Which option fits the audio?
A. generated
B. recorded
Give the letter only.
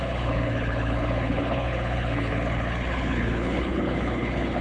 A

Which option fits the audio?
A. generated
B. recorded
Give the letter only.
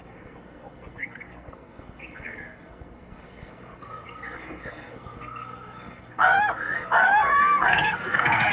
A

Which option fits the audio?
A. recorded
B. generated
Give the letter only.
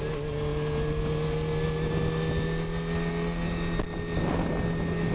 A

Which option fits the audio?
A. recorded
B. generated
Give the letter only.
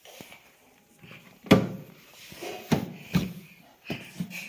A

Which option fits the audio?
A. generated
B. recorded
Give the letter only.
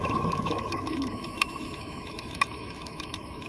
A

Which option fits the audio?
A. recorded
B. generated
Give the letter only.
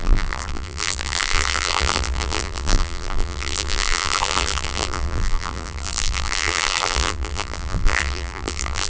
B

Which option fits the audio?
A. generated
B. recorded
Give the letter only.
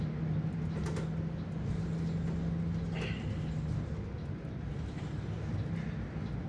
B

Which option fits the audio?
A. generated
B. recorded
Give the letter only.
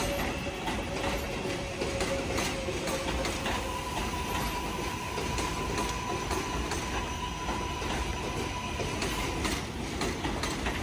B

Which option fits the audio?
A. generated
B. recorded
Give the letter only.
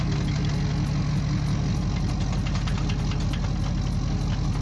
B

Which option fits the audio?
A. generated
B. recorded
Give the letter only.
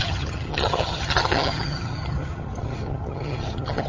A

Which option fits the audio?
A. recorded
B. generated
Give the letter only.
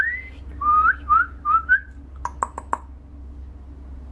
A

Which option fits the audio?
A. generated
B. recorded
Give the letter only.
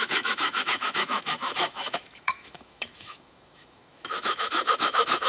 A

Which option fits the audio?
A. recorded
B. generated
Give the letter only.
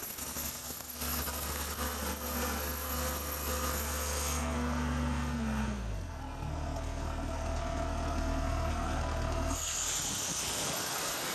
B